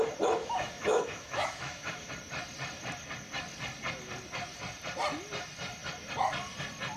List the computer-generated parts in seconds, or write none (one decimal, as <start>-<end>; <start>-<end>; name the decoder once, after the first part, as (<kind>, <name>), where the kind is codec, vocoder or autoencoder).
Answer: 0.4-2.1 (autoencoder, DAC-VAE)